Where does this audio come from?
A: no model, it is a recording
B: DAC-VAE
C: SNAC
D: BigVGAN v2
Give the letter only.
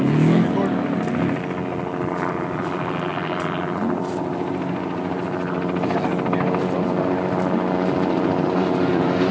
A